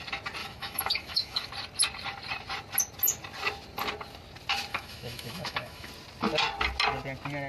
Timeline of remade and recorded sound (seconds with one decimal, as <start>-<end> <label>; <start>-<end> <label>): 0.0-0.4 recorded; 0.4-1.5 remade; 1.5-4.7 recorded; 4.7-5.9 remade; 5.9-7.5 recorded